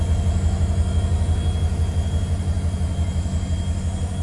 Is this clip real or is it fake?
real